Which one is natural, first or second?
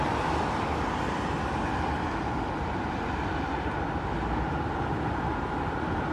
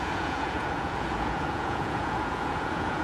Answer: first